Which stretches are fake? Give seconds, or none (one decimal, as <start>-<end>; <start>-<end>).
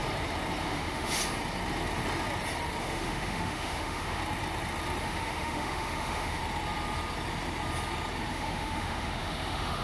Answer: 0.6-1.2; 2.8-4.2; 5.0-6.4; 8.3-9.8